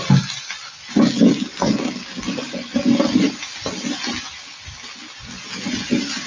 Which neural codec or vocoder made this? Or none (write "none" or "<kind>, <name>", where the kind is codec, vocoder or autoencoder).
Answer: none